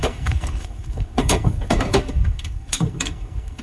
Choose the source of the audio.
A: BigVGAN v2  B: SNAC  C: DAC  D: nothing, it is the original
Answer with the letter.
B